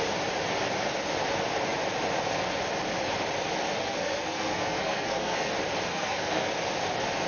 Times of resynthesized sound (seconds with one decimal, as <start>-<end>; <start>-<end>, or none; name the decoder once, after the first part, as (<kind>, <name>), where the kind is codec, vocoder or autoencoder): 3.8-5.5 (codec, SNAC); 5.9-6.5